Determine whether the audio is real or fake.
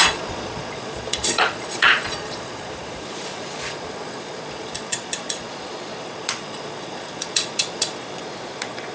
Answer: fake